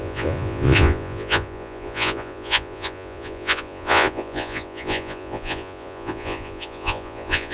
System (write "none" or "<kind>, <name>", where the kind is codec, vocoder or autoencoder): vocoder, Vocos